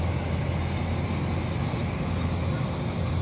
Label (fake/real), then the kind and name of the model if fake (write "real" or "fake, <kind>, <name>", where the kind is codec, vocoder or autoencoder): real